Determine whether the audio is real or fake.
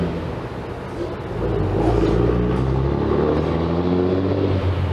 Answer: real